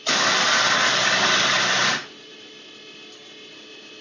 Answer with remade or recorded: recorded